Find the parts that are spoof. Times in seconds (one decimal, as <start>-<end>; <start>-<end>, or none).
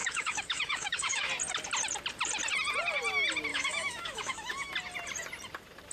0.0-1.3; 3.5-4.7